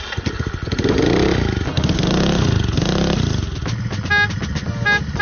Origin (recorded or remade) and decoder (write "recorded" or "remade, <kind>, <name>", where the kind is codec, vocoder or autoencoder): recorded